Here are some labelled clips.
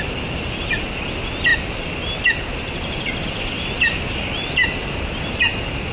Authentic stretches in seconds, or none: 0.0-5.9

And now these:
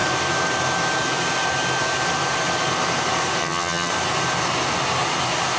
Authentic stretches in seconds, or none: 0.0-3.4; 3.9-5.6

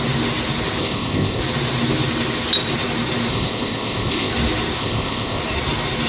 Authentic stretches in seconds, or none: 0.0-0.8; 1.4-3.3; 4.3-4.8; 5.4-6.1